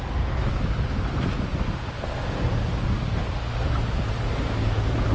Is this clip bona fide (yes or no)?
yes